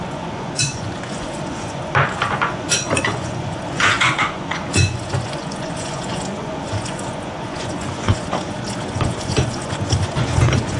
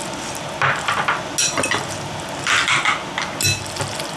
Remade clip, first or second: first